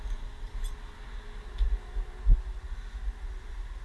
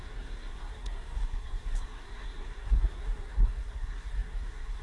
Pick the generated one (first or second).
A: second